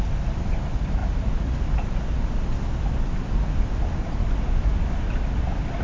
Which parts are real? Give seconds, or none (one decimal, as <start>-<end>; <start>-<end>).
0.0-5.8